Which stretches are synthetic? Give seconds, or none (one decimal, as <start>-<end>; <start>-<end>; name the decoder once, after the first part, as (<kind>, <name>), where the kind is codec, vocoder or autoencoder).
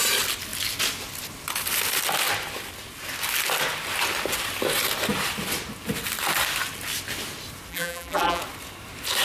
7.7-8.4 (vocoder, BigVGAN v2)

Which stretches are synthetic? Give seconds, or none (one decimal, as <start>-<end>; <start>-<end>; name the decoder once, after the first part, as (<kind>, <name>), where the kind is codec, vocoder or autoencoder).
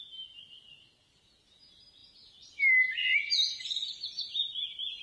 none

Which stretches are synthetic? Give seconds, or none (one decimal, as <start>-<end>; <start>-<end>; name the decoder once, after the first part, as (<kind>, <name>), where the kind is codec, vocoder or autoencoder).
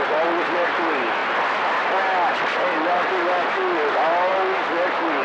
none